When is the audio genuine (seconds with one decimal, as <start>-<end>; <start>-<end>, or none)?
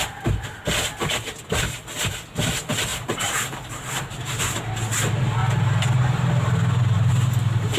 0.0-2.9; 4.6-7.8